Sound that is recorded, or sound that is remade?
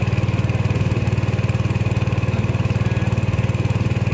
recorded